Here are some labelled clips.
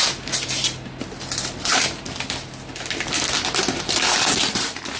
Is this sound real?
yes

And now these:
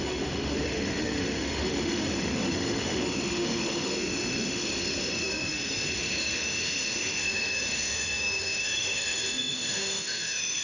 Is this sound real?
no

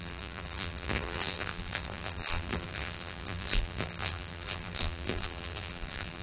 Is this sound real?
no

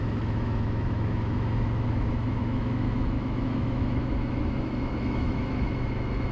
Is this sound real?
no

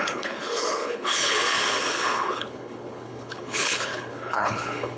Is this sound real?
no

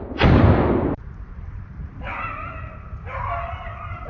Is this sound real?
yes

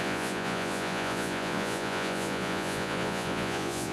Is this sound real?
no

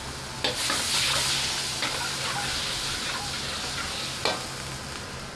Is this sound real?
yes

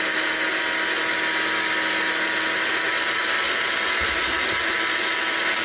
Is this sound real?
yes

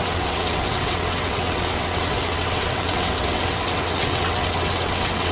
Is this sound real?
no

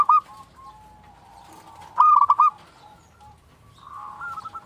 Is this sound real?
yes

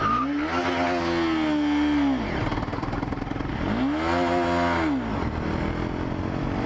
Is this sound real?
yes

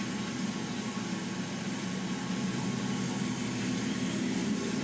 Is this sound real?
yes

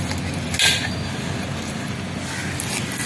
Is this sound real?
yes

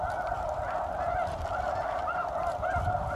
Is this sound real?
yes